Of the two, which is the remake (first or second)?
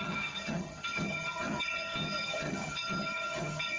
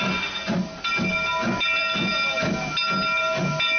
first